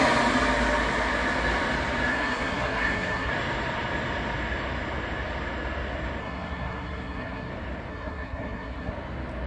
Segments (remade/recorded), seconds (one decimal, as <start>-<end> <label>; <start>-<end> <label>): 0.0-2.1 recorded; 2.1-3.3 remade; 3.3-6.2 recorded; 6.2-7.5 remade; 7.5-7.9 recorded; 7.9-8.9 remade; 8.9-9.5 recorded

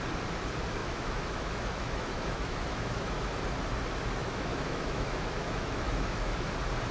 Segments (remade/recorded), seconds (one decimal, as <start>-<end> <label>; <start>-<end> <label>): 0.0-0.8 recorded; 0.8-3.3 remade; 3.3-4.2 recorded; 4.2-6.5 remade; 6.5-6.9 recorded

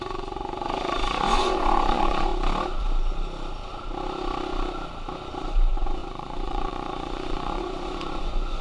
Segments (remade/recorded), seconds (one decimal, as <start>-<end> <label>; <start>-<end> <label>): 0.0-2.3 remade; 2.3-5.4 recorded; 5.4-8.6 remade